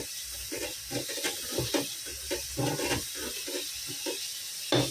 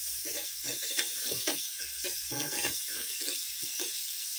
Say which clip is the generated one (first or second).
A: second